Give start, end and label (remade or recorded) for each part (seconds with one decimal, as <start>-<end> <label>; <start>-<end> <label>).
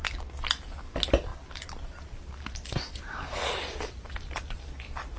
0.0-5.2 recorded